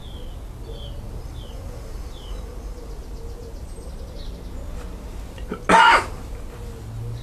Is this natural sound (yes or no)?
yes